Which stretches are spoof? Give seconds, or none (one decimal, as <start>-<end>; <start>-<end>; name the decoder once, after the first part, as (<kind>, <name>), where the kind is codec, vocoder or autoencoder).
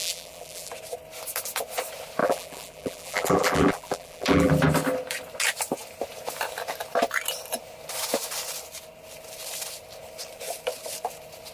0.0-0.7 (vocoder, BigVGAN v2); 2.2-4.5